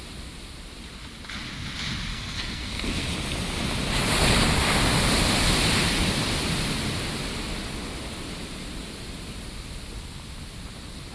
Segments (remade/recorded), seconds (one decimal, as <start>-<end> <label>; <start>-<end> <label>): 0.0-2.1 recorded; 2.1-3.1 remade; 3.1-11.1 recorded